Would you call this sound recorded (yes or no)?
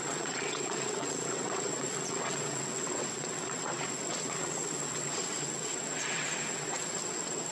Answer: no